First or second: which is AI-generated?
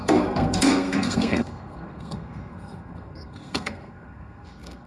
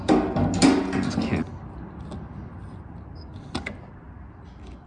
first